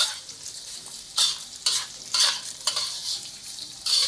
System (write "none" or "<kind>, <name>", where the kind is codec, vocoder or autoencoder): vocoder, BigVGAN v2